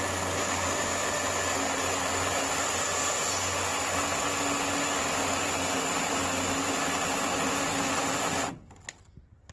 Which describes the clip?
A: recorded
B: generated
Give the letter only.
A